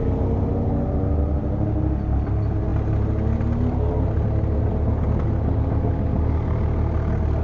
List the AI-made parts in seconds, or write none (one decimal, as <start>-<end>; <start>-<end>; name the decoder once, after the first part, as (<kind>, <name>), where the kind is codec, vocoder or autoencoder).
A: none